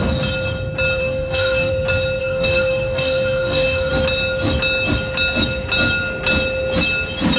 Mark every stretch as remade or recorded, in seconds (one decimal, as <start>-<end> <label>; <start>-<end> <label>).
0.0-1.0 recorded; 1.0-1.7 remade; 1.7-2.2 recorded; 2.2-3.9 remade; 3.9-7.4 recorded